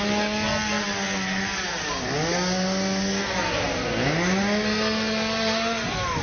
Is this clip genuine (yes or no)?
yes